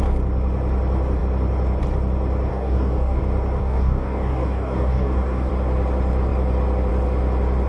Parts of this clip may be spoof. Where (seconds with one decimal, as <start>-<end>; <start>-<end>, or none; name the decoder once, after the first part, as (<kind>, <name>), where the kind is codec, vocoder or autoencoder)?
2.5-3.2 (codec, DAC); 3.6-5.5